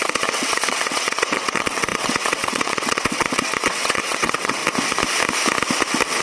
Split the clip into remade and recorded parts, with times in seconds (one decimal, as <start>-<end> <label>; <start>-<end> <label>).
0.0-4.6 remade; 4.6-6.2 recorded